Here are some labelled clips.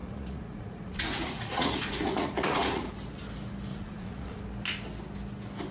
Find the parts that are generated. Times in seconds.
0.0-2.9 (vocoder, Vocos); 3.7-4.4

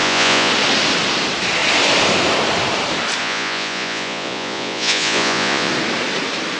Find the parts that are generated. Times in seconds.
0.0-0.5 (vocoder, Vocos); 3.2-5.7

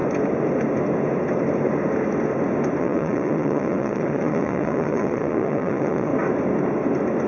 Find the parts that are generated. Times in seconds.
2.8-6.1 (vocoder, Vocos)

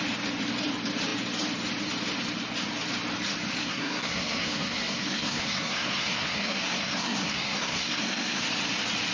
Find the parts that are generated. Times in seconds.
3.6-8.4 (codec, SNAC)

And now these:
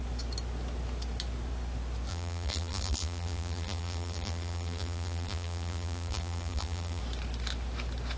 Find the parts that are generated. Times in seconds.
2.1-7.0 (vocoder, BigVGAN v2)

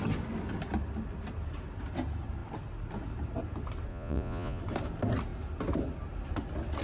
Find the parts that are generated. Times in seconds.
3.9-4.6 (vocoder, Vocos)